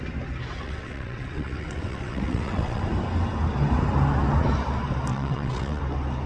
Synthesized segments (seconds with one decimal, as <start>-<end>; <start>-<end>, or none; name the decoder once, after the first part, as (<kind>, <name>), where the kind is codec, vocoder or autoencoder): 0.6-2.8 (vocoder, WaveNeXt); 5.1-5.8